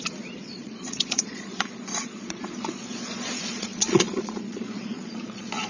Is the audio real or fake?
fake